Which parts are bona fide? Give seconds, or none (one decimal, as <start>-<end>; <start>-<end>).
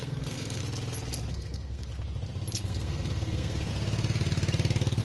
0.6-1.3; 1.9-2.6; 3.7-5.0